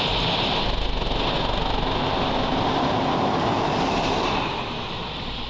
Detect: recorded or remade recorded